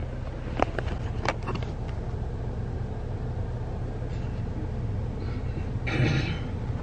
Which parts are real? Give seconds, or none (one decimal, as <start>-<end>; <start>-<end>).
0.0-6.8